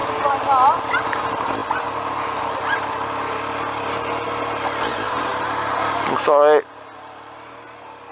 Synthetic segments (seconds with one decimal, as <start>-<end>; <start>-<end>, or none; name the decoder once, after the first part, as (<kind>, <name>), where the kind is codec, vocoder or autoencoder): none